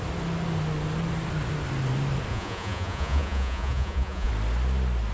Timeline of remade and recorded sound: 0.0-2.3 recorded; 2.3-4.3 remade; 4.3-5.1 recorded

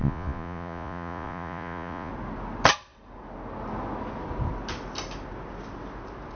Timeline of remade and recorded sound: 0.0-2.1 remade; 2.1-6.4 recorded

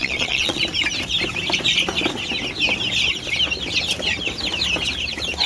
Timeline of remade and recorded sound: 0.0-0.6 remade; 0.6-5.5 recorded